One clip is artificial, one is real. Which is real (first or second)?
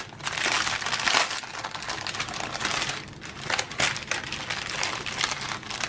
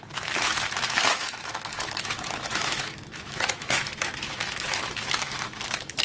first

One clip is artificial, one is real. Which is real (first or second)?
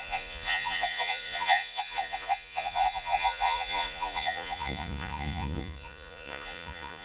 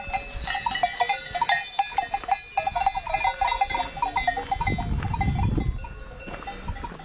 second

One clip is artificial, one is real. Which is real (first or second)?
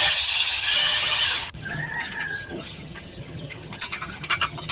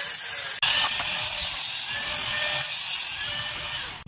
second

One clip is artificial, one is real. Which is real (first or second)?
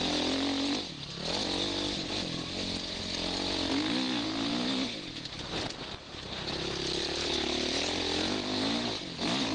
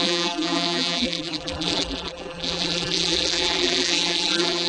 first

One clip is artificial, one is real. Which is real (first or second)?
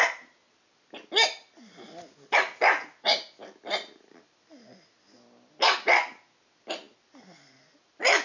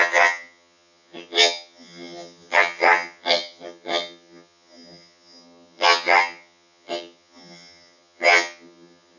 first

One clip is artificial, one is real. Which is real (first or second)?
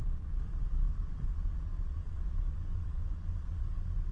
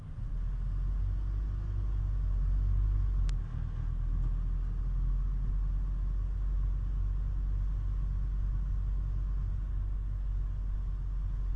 second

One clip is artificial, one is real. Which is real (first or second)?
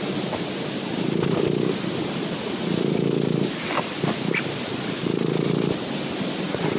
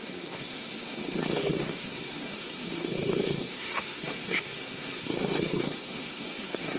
first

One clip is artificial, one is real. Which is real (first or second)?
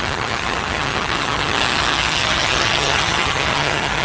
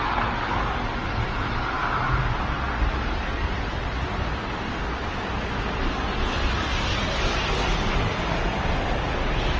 second